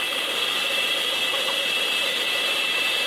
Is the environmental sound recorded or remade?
recorded